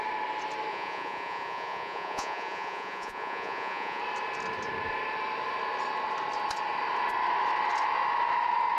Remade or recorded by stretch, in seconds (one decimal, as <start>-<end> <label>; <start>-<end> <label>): 0.0-0.7 recorded; 0.7-4.0 remade; 4.0-8.8 recorded